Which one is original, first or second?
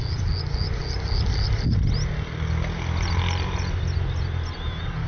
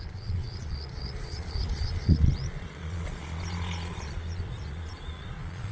first